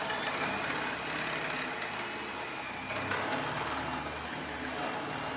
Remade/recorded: recorded